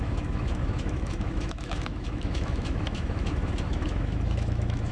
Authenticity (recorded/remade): remade